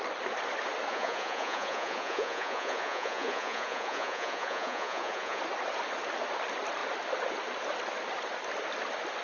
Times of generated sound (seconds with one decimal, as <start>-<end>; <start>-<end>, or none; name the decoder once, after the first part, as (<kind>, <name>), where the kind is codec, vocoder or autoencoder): 0.9-5.4 (vocoder, Vocos)